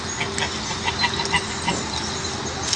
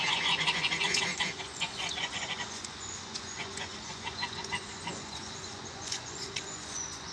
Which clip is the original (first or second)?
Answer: first